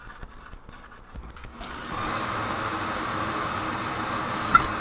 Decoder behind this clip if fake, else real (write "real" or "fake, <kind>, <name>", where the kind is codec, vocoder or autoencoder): real